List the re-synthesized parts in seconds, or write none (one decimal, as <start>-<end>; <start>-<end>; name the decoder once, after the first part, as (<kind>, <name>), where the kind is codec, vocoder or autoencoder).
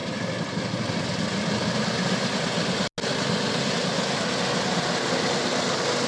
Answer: none